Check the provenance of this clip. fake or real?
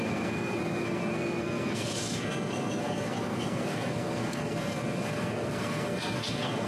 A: fake